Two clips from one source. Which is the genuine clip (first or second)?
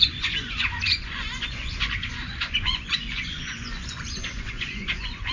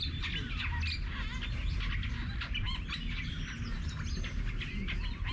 second